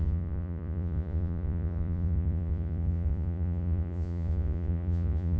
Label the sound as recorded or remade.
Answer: remade